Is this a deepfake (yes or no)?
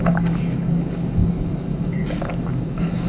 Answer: yes